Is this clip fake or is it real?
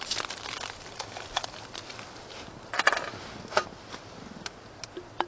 real